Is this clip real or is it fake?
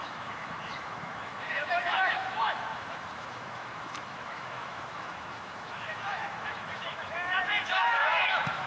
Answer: fake